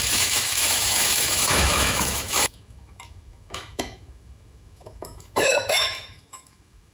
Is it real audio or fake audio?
fake